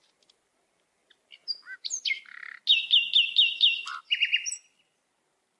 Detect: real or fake real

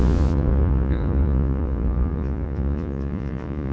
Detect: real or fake fake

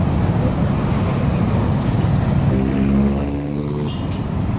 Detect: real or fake real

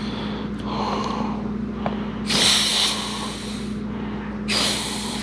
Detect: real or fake real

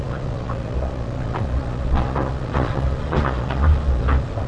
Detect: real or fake fake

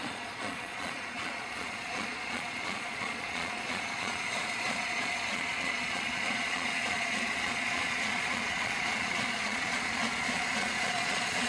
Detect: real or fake fake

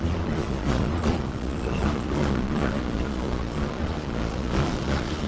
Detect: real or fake fake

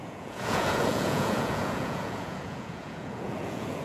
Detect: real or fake fake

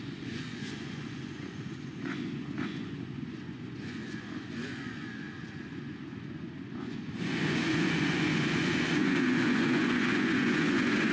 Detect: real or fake fake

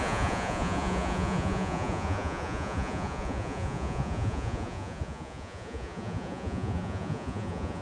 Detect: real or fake fake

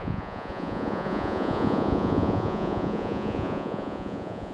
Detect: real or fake fake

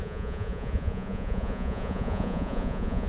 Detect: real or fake fake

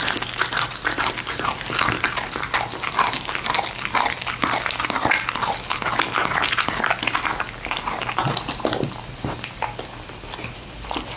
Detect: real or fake real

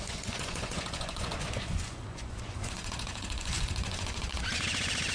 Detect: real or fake fake